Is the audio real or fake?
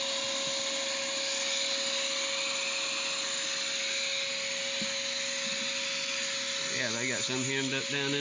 real